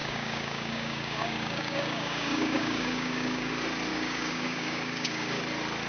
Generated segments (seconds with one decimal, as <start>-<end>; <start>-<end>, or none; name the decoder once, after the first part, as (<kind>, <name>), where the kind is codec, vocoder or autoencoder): 0.0-3.5 (codec, DAC); 3.9-5.4